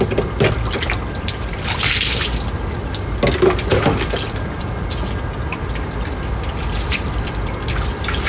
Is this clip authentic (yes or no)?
yes